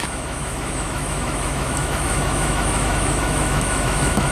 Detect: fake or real fake